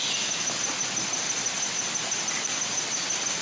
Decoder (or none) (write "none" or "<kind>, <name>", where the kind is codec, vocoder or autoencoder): none